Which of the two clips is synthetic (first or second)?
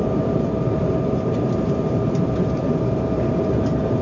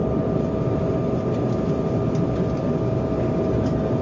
first